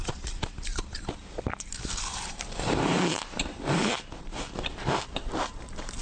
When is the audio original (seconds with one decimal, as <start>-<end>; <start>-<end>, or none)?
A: 0.7-2.2; 3.8-5.2

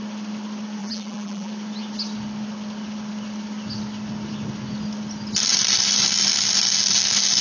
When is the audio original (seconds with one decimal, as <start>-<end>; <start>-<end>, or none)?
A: 0.0-0.8; 1.5-7.4